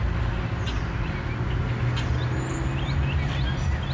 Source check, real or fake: real